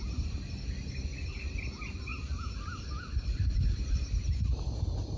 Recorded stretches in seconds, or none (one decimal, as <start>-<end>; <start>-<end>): 0.0-2.1